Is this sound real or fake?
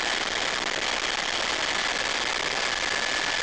real